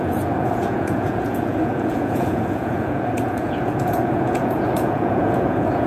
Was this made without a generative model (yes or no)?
no